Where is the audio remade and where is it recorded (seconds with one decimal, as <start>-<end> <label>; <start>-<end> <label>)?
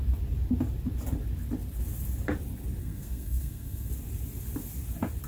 0.0-2.8 recorded; 2.8-3.9 remade; 3.9-5.3 recorded